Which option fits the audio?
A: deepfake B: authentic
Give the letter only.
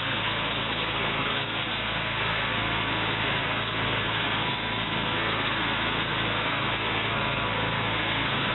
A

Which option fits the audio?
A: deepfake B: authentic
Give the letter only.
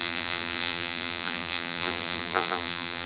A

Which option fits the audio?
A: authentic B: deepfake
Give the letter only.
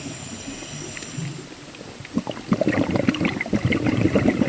A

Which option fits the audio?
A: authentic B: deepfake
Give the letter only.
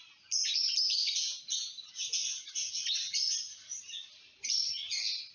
A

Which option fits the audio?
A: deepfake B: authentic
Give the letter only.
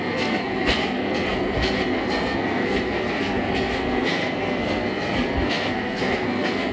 A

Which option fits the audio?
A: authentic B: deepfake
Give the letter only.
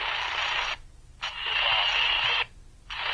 A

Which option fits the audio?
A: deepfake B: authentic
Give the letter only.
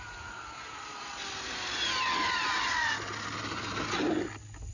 B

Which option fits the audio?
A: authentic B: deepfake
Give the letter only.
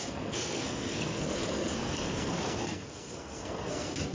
B